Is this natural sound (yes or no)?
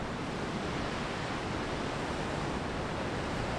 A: yes